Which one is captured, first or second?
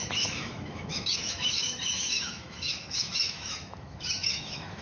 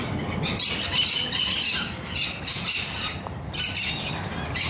second